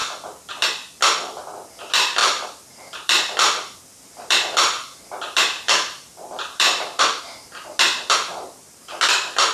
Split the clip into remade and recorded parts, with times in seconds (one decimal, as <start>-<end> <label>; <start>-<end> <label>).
0.0-1.0 remade; 1.0-2.2 recorded; 2.2-7.2 remade; 7.2-9.5 recorded